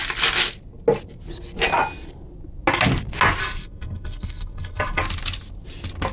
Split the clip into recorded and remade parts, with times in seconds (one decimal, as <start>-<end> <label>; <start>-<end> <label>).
0.0-3.4 recorded; 3.4-5.0 remade; 5.0-6.1 recorded